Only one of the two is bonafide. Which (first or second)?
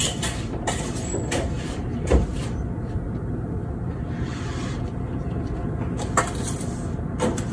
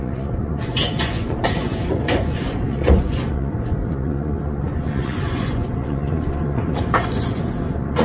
first